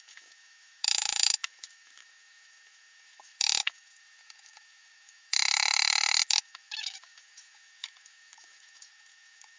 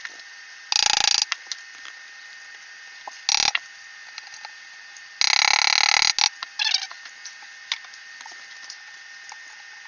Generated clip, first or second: first